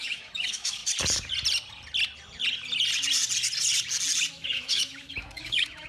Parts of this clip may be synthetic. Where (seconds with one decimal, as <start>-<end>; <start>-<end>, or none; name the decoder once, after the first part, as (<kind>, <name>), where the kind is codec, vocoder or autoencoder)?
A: 0.0-0.8 (autoencoder, DAC-VAE); 4.3-5.9